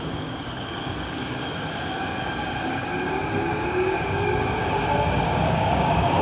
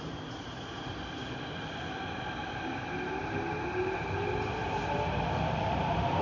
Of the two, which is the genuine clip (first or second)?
second